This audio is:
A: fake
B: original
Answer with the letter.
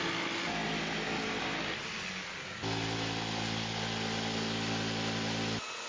B